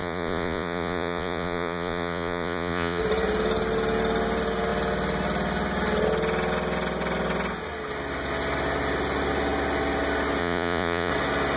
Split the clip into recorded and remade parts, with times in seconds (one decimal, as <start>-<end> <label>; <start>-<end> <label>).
0.0-3.0 remade; 3.0-10.4 recorded; 10.4-11.1 remade; 11.1-11.6 recorded